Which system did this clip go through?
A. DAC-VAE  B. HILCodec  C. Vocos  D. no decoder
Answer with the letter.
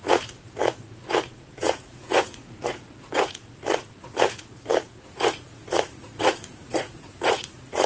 C